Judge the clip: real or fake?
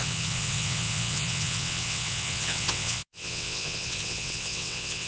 fake